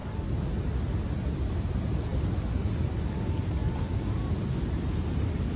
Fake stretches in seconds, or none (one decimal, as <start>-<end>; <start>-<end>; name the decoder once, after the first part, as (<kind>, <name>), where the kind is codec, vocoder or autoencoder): none